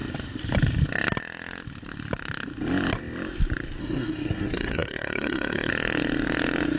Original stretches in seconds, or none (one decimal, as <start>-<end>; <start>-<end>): 0.0-3.8; 5.7-6.8